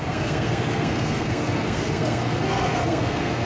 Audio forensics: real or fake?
fake